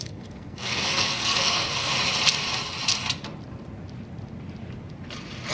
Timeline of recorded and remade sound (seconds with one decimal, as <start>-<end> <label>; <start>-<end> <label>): 0.0-1.9 remade; 1.9-5.5 recorded